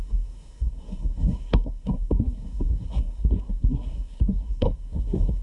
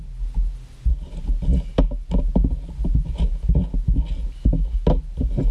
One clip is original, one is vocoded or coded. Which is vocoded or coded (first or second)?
first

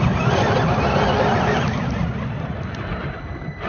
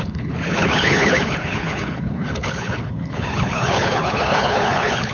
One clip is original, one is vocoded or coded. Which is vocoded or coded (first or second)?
second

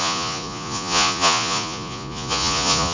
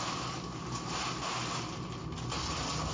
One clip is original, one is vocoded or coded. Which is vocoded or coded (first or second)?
first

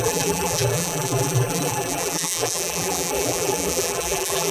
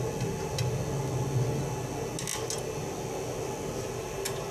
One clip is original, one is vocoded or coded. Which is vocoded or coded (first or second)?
first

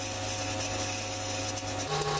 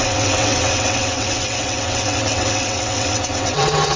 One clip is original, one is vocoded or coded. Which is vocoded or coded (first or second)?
second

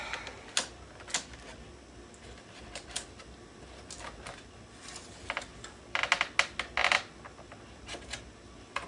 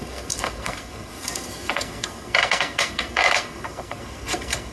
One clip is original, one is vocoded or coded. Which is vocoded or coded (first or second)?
second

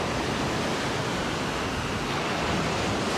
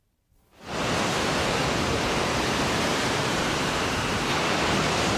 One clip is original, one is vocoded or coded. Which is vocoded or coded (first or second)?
second